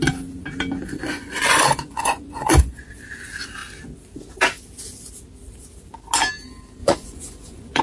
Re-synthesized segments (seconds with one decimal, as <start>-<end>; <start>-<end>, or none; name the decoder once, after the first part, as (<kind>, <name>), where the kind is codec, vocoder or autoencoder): 1.0-2.9 (vocoder, Vocos); 6.8-7.8